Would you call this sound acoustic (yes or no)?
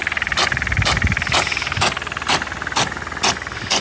yes